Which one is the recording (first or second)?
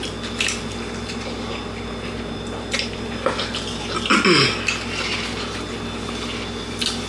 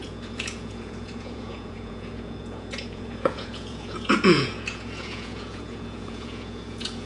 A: first